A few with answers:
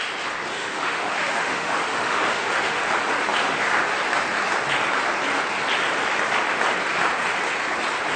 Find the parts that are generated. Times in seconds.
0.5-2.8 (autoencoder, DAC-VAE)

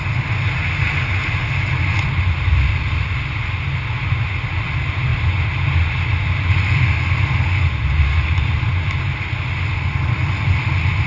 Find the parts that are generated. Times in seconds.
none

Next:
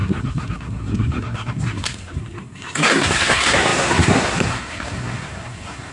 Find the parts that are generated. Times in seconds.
0.0-5.9 (codec, SNAC)

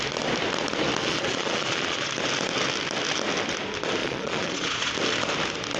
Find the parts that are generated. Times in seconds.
1.0-2.1 (vocoder, Vocos); 4.0-4.9

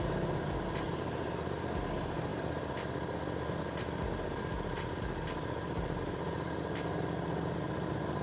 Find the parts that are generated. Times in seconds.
none